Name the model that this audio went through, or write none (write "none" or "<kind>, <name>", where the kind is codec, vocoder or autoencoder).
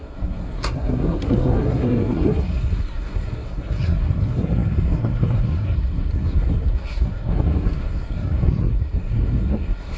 codec, SNAC